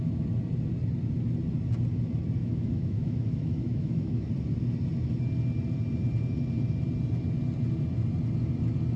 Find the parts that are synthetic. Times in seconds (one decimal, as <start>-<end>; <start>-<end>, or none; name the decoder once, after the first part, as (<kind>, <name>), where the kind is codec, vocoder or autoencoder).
2.4-4.3 (autoencoder, DAC-VAE)